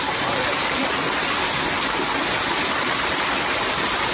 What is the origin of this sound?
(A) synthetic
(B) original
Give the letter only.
B